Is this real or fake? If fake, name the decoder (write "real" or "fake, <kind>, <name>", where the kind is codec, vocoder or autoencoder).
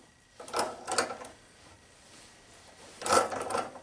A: real